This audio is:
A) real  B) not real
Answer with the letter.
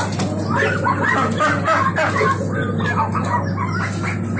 A